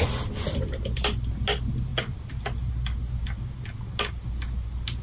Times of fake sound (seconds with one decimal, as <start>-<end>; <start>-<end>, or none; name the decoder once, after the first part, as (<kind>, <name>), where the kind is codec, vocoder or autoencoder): none